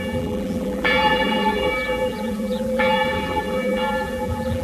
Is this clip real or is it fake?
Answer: fake